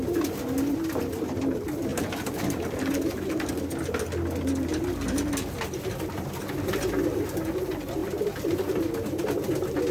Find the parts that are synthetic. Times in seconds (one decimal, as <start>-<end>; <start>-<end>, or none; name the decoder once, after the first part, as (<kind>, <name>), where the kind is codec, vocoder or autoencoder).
1.9-3.5 (vocoder, BigVGAN v2); 4.7-5.3